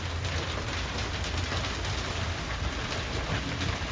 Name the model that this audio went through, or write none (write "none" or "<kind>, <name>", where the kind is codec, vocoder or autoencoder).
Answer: none